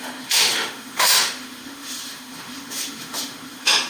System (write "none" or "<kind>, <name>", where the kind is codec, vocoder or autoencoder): autoencoder, DAC-VAE